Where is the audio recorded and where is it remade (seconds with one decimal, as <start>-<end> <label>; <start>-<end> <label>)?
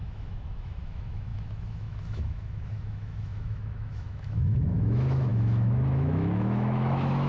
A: 0.0-7.3 remade